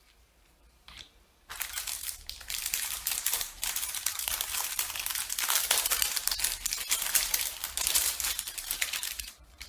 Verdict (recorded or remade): remade